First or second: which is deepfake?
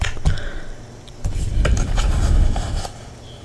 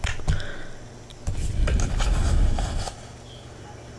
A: first